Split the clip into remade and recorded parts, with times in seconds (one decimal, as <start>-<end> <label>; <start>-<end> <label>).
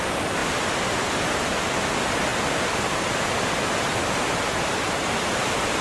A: 0.0-5.8 recorded